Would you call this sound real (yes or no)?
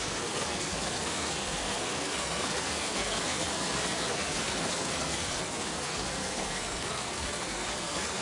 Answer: no